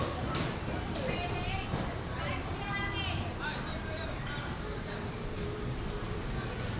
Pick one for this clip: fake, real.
fake